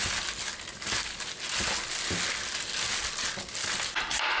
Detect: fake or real real